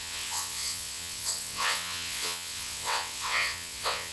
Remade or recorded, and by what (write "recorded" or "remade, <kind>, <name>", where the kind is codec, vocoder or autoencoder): remade, vocoder, WaveNeXt